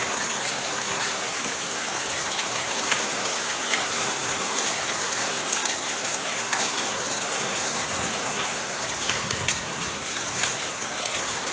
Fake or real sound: fake